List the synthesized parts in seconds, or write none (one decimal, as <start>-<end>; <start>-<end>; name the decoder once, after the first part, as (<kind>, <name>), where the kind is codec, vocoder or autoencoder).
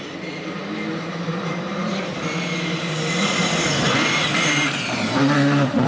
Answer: none